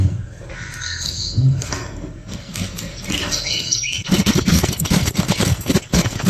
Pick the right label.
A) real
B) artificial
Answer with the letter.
B